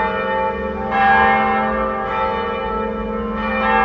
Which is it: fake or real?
real